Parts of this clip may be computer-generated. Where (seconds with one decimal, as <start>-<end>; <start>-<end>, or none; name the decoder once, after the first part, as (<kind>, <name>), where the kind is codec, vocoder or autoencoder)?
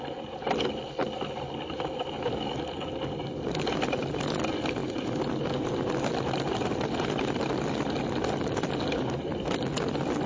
none